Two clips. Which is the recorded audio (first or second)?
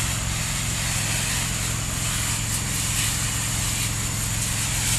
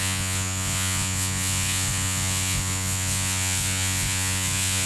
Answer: first